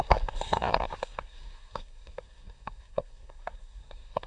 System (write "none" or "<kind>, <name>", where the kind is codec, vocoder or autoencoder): codec, SNAC